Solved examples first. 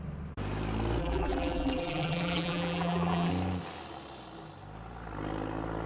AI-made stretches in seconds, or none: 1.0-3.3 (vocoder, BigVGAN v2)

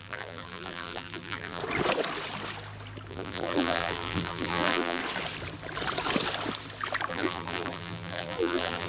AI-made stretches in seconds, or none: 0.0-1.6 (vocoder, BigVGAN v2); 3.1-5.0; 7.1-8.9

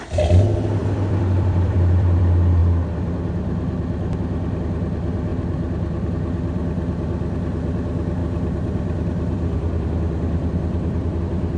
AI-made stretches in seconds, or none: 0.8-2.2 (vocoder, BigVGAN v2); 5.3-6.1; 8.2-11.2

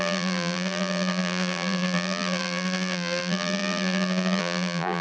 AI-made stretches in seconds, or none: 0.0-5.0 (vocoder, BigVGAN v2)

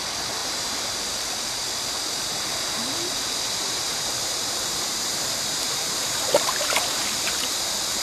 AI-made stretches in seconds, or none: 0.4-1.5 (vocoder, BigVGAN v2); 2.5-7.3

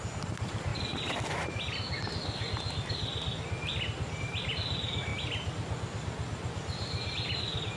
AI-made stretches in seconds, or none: 0.0-0.7 (vocoder, BigVGAN v2); 4.2-5.1

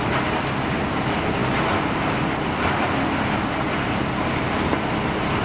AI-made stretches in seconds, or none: 0.0-5.4 (vocoder, BigVGAN v2)